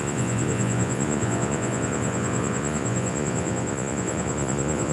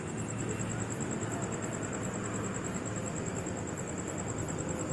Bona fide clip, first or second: second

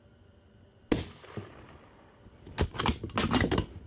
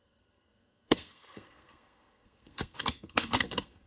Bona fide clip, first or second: first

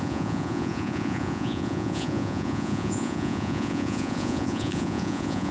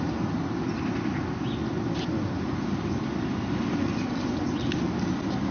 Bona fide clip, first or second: second